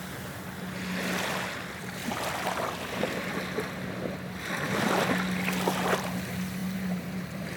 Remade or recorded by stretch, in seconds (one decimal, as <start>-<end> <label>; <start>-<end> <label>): 0.0-6.6 recorded; 6.6-7.6 remade